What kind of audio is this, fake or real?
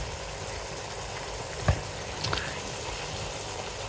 real